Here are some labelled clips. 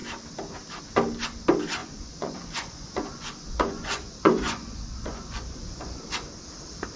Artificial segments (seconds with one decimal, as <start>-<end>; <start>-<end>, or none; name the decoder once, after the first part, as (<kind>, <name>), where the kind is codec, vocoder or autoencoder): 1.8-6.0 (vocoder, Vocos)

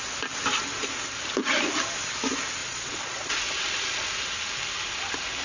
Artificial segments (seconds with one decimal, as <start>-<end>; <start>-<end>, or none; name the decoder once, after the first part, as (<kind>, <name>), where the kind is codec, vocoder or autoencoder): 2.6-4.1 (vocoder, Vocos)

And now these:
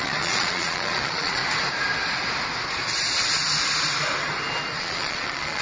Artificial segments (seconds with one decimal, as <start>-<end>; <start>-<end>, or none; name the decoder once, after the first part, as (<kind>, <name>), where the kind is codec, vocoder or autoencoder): 0.0-1.4 (vocoder, Vocos); 4.8-5.6

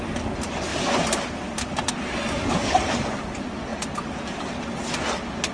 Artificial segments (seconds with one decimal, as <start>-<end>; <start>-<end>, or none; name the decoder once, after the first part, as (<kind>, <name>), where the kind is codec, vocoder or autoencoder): none

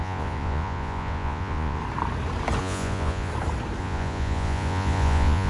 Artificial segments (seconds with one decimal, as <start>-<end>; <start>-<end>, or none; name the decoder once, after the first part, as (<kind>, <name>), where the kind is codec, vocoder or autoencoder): 0.0-1.8 (vocoder, Vocos); 2.6-3.3; 3.8-5.5

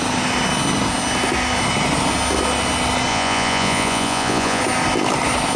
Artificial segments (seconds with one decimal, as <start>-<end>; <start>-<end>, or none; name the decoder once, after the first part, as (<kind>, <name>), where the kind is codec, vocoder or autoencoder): 3.1-4.6 (vocoder, Vocos)